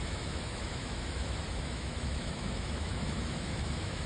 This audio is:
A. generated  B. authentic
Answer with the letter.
A